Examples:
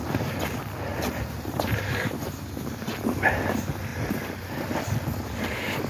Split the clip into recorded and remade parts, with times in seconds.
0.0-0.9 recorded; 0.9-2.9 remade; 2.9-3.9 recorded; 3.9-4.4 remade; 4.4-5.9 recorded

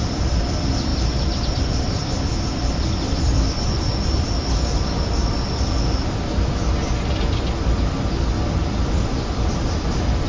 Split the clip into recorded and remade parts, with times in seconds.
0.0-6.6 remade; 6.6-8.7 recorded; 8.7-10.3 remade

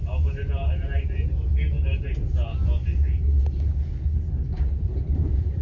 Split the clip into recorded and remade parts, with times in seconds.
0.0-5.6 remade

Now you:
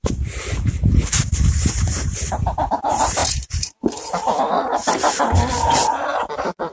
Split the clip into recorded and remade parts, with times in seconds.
0.0-4.8 remade; 4.8-5.8 recorded; 5.8-6.7 remade